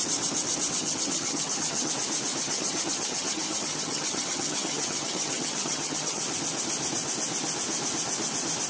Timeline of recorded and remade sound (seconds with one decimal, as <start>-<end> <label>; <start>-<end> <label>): 0.0-0.8 recorded; 0.8-1.9 remade; 1.9-2.4 recorded; 2.4-6.2 remade; 6.2-8.7 recorded